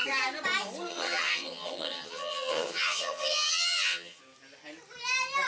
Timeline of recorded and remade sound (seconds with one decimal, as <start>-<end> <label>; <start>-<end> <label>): 0.0-0.9 recorded; 0.9-4.2 remade; 4.2-5.5 recorded